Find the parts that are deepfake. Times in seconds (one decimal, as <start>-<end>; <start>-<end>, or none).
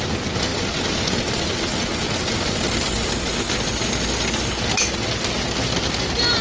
none